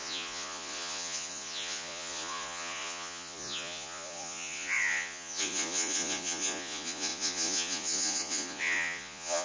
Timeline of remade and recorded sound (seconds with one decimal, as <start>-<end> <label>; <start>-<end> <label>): 0.0-9.4 remade